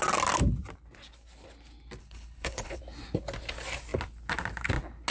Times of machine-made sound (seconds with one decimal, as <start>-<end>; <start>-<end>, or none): 2.0-2.8

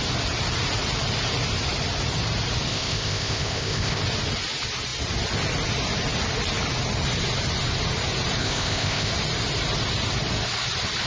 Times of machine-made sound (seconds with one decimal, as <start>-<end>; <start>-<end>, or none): 2.7-4.0; 8.4-9.1

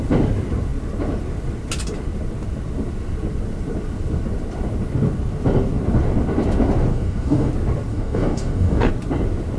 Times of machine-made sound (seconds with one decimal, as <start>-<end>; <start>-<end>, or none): 6.9-7.5; 7.9-8.9

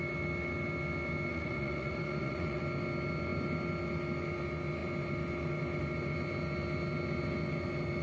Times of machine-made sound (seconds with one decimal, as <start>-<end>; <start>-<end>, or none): 1.3-2.6

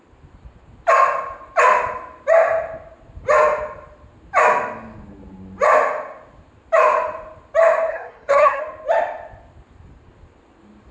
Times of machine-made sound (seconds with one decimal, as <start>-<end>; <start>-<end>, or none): 7.9-8.6

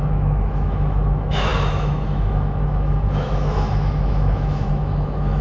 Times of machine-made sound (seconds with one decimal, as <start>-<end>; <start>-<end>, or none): 0.0-5.4

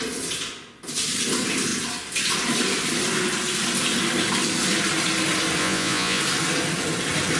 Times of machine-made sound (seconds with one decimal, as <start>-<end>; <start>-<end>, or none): 5.6-6.2